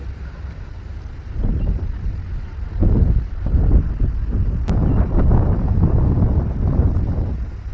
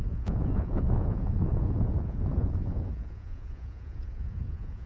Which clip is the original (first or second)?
first